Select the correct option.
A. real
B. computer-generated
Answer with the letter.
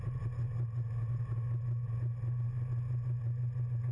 A